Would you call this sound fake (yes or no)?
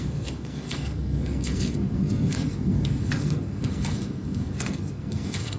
yes